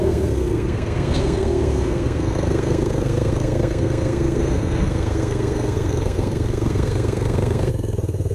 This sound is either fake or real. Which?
fake